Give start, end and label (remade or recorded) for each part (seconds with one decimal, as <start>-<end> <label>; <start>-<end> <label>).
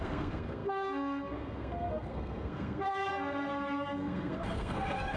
0.0-5.2 remade